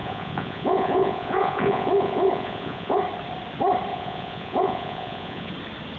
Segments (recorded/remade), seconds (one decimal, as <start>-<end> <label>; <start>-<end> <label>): 0.0-3.0 remade; 3.0-3.9 recorded; 3.9-5.5 remade; 5.5-6.0 recorded